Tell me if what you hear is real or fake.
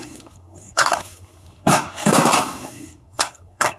fake